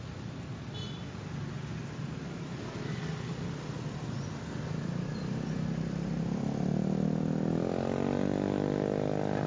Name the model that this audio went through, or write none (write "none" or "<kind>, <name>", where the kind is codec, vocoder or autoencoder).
none